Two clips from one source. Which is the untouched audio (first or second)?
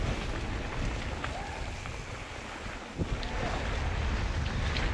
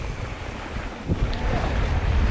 first